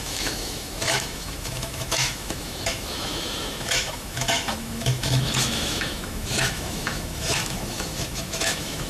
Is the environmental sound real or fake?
fake